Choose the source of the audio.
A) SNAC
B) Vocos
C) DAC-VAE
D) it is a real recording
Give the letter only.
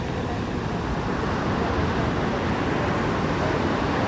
D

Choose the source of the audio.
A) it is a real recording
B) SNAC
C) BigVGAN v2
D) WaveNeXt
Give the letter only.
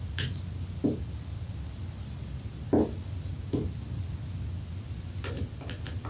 A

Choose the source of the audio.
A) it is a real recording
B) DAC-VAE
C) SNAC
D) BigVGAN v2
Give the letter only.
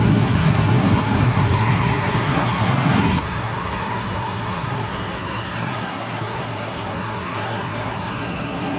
C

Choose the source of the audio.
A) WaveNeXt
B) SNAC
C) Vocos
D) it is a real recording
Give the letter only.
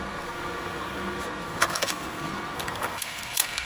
B